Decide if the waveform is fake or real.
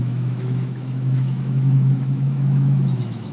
fake